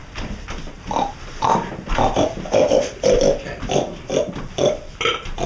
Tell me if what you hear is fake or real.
fake